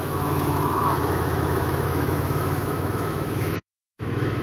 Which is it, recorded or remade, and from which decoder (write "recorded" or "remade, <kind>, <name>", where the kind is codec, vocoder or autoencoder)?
remade, autoencoder, DAC-VAE